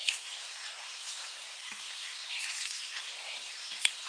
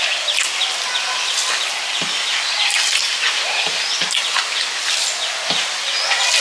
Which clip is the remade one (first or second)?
first